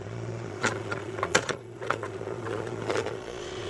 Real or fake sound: fake